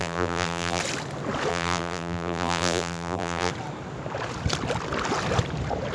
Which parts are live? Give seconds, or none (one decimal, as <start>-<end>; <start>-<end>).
0.8-1.5; 3.5-5.9